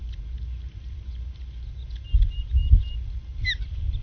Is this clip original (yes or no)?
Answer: yes